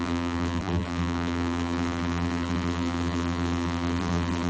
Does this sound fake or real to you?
fake